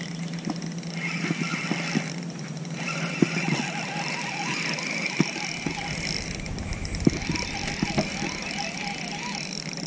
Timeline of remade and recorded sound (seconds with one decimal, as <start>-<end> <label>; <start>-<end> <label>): 0.0-1.5 recorded; 1.5-5.2 remade; 5.2-9.9 recorded